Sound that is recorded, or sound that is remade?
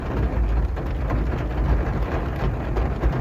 recorded